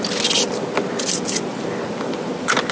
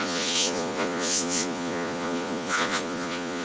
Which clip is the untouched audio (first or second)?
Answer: first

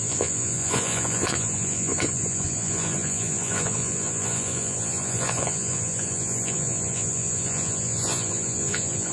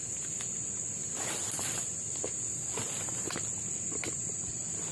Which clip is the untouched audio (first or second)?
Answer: second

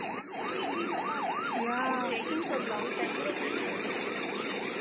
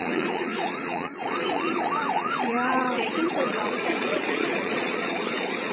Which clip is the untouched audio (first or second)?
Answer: first